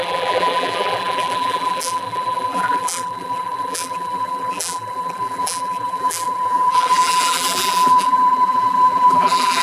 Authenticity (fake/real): fake